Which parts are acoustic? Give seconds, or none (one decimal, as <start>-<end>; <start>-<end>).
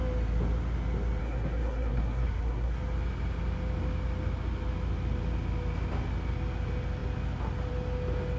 0.0-1.2; 2.8-8.4